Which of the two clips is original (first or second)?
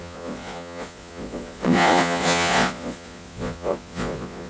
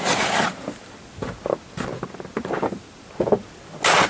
second